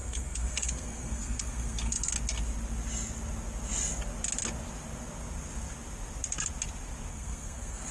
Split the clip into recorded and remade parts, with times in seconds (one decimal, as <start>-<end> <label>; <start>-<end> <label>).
0.0-2.1 remade; 2.1-7.1 recorded; 7.1-7.9 remade